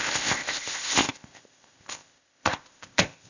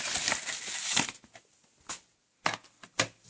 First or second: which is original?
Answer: second